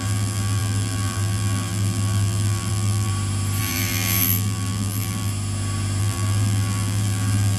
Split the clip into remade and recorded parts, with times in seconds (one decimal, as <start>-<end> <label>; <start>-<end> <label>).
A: 0.0-3.1 remade; 3.1-3.6 recorded; 3.6-5.3 remade; 5.3-6.0 recorded; 6.0-7.6 remade